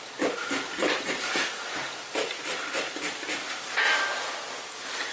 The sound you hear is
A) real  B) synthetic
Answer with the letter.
A